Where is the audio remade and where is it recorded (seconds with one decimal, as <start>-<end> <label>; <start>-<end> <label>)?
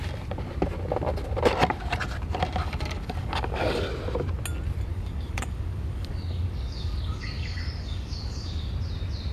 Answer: 0.0-2.6 recorded; 2.6-3.8 remade; 3.8-4.9 recorded; 4.9-8.7 remade; 8.7-9.3 recorded